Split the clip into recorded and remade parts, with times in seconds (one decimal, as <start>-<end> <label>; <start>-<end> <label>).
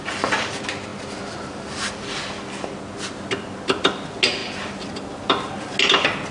0.0-6.3 recorded